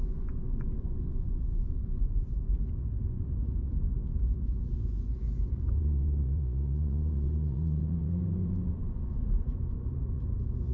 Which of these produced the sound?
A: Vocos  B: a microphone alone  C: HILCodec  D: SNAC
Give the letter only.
A